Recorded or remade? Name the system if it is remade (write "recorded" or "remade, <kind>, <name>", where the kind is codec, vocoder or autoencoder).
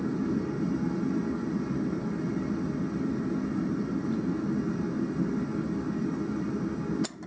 recorded